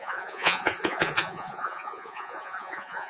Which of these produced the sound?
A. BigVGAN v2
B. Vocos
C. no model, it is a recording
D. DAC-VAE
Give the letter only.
B